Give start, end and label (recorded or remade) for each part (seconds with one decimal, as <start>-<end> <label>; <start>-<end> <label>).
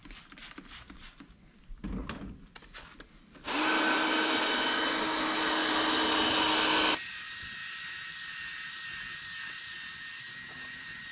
0.0-7.6 recorded; 7.6-9.6 remade; 9.6-11.1 recorded